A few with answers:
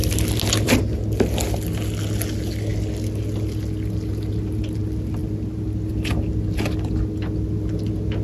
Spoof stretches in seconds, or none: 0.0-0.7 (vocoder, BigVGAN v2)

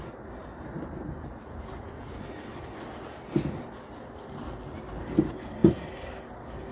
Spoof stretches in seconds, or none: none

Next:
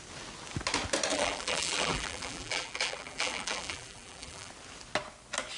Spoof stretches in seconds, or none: 1.1-4.5 (vocoder, BigVGAN v2)

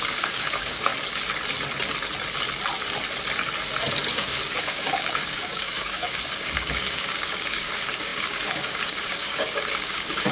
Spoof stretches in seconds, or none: 0.0-0.9 (codec, DAC); 4.1-10.3

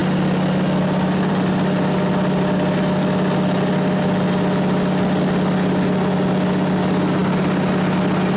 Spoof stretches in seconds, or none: none

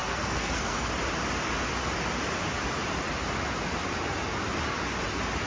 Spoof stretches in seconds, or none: 0.0-0.9 (codec, SNAC)

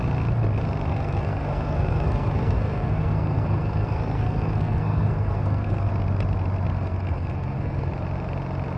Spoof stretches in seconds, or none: 0.9-5.9 (codec, SNAC); 6.7-7.9